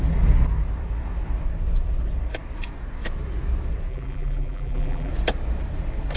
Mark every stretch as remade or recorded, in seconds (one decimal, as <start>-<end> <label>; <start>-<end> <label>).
0.0-3.9 recorded; 3.9-5.1 remade; 5.1-6.2 recorded